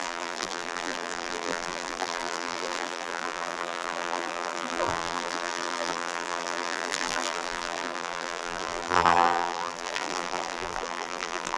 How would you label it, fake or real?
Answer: fake